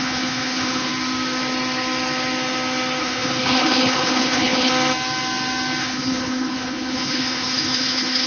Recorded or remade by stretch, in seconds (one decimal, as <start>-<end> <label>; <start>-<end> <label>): 0.0-0.9 remade; 0.9-3.0 recorded; 3.0-4.7 remade; 4.7-5.8 recorded; 5.8-8.3 remade